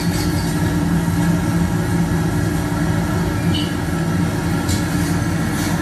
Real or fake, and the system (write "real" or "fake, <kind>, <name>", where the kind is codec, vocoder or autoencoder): real